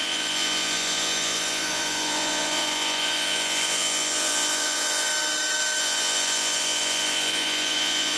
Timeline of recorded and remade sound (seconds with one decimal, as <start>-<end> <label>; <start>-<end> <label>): 0.0-5.1 remade; 5.1-5.8 recorded; 5.8-8.2 remade